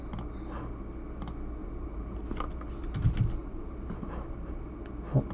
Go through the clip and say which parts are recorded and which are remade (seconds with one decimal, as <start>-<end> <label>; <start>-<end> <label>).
0.0-1.6 recorded; 1.6-2.2 remade; 2.2-3.4 recorded; 3.4-4.6 remade; 4.6-5.3 recorded